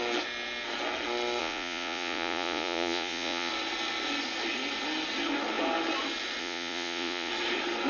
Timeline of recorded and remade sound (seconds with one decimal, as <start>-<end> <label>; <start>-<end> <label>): 0.0-1.4 recorded; 1.4-3.5 remade; 3.5-6.4 recorded; 6.4-7.3 remade; 7.3-7.9 recorded